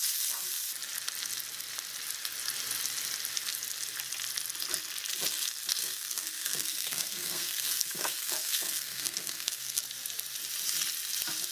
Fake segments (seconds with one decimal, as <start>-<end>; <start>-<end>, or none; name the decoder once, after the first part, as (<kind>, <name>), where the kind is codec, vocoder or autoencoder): 5.8-9.8 (codec, SNAC)